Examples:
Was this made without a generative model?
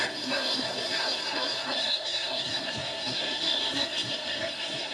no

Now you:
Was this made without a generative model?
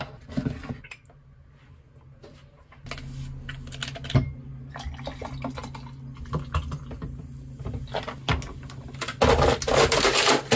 yes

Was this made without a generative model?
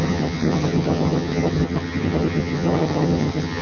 no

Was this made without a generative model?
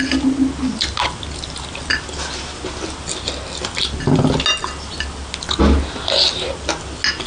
yes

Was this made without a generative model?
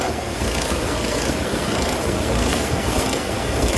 no